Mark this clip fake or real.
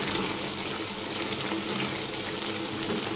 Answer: real